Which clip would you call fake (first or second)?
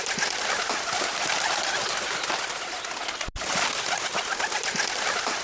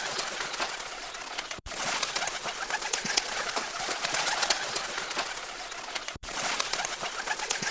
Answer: second